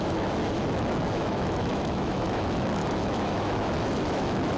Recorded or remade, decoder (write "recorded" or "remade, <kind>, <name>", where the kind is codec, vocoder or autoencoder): remade, autoencoder, DAC-VAE